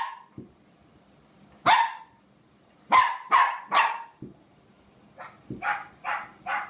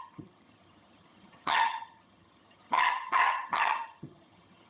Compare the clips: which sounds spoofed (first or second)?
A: second